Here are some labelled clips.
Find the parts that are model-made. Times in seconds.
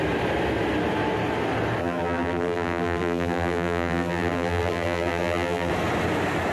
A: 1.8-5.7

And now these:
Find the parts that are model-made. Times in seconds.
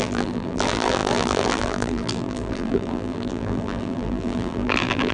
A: 0.0-5.1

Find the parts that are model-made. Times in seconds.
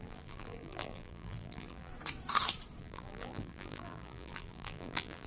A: 0.0-1.9; 2.8-5.3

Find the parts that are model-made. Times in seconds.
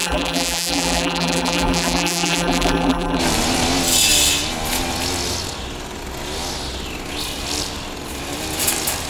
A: 0.0-3.2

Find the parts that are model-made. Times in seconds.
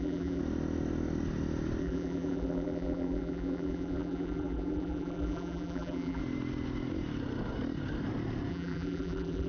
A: 0.0-0.4; 1.8-6.2; 8.5-9.5